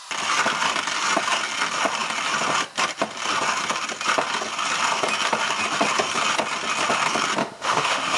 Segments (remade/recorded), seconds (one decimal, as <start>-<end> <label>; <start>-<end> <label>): 0.0-7.4 recorded; 7.4-8.2 remade